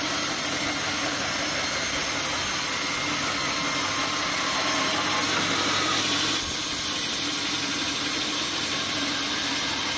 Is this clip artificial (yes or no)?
no